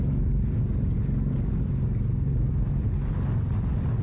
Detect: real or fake real